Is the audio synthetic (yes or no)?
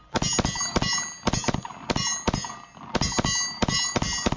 no